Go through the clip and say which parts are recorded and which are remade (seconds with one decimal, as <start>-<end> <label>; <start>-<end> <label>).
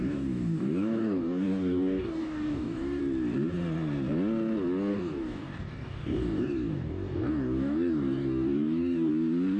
0.0-3.0 remade; 3.0-4.9 recorded; 4.9-9.1 remade; 9.1-9.6 recorded